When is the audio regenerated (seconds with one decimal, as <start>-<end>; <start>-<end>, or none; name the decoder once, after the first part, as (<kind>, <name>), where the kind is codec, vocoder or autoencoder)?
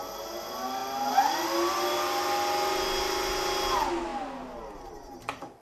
none